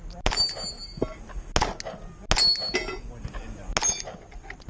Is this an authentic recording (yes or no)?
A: yes